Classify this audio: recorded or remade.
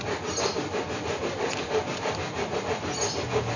recorded